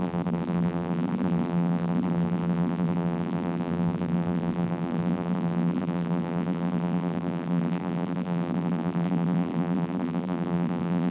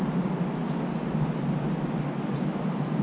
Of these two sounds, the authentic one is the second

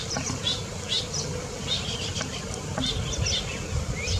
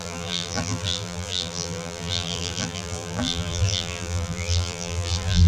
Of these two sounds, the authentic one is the first